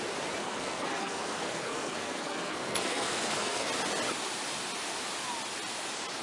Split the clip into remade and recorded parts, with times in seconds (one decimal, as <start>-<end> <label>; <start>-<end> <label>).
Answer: 0.0-0.4 recorded; 0.4-3.7 remade; 3.7-6.2 recorded